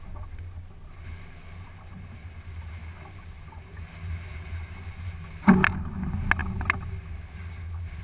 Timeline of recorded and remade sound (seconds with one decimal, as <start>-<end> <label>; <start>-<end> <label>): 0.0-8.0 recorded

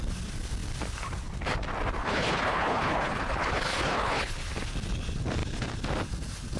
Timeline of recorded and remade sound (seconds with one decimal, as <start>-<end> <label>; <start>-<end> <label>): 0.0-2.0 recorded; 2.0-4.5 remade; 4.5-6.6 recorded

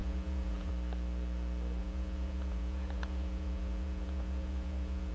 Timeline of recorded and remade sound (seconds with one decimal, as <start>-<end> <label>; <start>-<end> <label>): 0.0-0.7 remade; 0.7-1.8 recorded; 1.8-5.1 remade

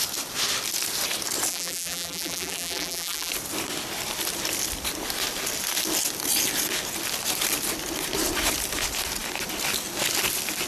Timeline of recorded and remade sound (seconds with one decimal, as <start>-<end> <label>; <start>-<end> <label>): 0.0-1.5 recorded; 1.5-3.3 remade; 3.3-10.7 recorded

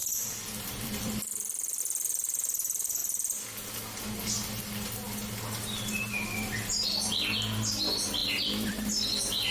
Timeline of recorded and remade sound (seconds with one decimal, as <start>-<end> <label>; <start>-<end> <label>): 0.0-1.8 remade; 1.8-9.5 recorded